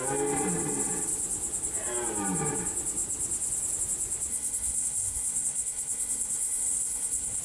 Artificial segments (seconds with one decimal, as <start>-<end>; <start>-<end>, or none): 4.3-7.4